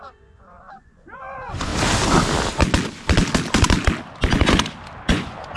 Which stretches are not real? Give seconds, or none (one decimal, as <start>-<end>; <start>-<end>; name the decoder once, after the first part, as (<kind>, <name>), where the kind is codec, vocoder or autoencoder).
0.0-1.7 (vocoder, Vocos); 5.1-5.6